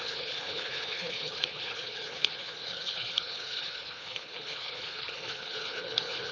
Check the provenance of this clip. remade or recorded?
remade